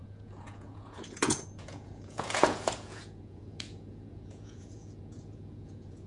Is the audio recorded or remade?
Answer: remade